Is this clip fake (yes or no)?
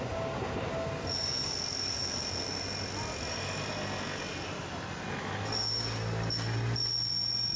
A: no